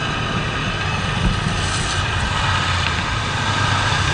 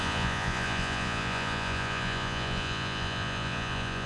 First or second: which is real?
first